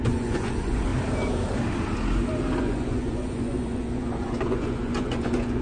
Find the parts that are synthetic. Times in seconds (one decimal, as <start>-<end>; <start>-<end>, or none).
0.0-0.9; 2.6-5.6